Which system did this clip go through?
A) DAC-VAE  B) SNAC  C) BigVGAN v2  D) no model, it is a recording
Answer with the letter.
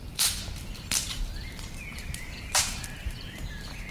C